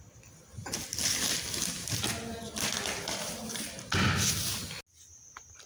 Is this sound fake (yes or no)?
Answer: no